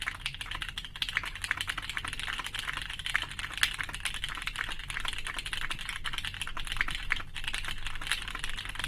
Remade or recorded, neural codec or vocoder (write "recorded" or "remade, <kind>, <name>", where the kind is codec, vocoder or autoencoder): recorded